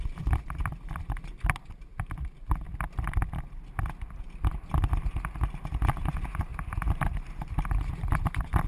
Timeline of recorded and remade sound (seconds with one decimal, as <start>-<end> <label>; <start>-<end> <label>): 0.0-1.9 recorded; 1.9-2.7 remade; 2.7-6.5 recorded; 6.5-8.7 remade

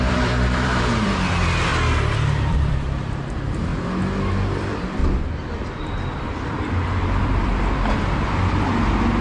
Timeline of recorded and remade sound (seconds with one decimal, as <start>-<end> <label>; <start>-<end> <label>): 0.0-1.7 remade; 1.7-2.5 recorded; 2.5-3.7 remade; 3.7-4.3 recorded; 4.3-5.0 remade; 5.0-5.8 recorded; 5.8-9.2 remade

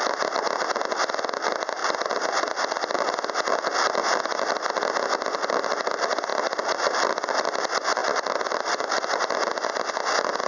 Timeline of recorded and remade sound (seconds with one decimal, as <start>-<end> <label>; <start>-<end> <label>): 0.0-1.8 recorded; 1.8-2.4 remade; 2.4-6.3 recorded; 6.3-7.6 remade; 7.6-8.0 recorded; 8.0-9.9 remade; 9.9-10.5 recorded

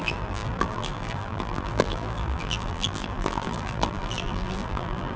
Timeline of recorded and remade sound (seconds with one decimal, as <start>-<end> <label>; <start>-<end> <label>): 0.0-5.2 remade